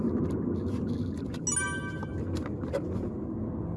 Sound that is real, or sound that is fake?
real